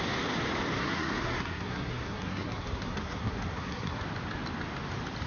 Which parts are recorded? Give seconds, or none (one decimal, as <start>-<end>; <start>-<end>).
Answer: 0.0-0.8; 4.0-5.3